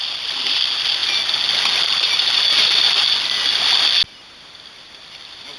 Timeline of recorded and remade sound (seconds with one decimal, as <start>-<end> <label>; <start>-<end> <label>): 0.0-5.6 recorded